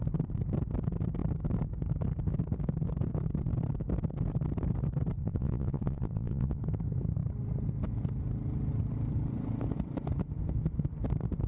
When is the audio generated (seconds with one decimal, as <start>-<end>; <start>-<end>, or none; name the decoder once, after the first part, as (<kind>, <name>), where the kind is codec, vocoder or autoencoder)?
5.2-6.6 (vocoder, WaveNeXt)